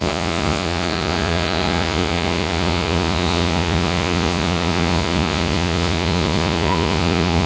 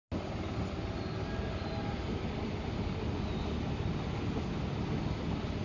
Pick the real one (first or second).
second